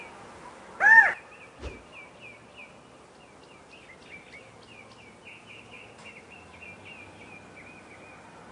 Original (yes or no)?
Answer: yes